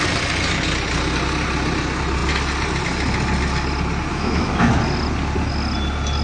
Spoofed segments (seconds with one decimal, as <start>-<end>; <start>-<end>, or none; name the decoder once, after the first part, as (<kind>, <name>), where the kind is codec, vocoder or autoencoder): 4.1-4.7 (autoencoder, DAC-VAE)